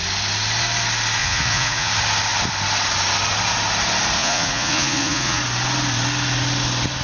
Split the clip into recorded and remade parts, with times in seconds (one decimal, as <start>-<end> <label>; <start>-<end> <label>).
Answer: 0.0-1.2 recorded; 1.2-1.9 remade; 1.9-4.2 recorded; 4.2-5.4 remade; 5.4-7.0 recorded